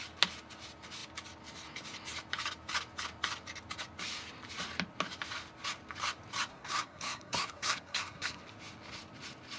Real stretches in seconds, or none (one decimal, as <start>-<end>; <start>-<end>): 0.0-6.5; 8.4-9.6